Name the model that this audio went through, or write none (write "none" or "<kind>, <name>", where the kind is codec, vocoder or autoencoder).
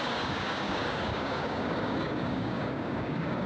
codec, DAC